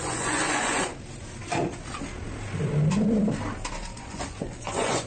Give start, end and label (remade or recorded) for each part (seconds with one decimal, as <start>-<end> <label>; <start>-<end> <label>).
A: 0.0-0.9 remade; 0.9-4.0 recorded; 4.0-5.1 remade